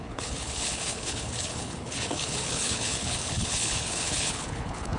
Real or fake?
fake